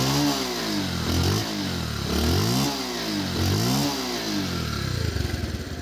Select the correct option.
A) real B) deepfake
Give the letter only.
A